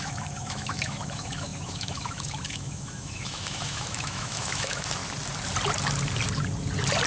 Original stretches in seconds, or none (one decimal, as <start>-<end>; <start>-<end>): 5.0-7.1

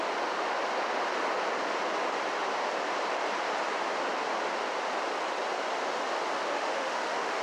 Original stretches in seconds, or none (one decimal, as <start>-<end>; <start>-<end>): 0.0-6.5

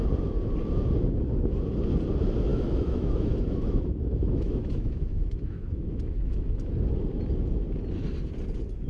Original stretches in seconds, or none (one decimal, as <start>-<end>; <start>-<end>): 0.0-2.5; 6.7-8.9